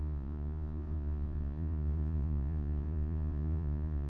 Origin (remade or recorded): remade